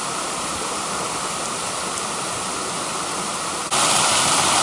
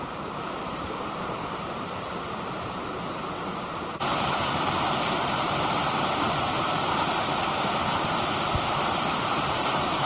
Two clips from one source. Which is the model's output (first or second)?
second